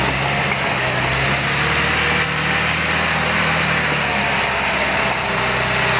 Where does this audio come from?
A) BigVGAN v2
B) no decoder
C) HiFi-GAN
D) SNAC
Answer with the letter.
B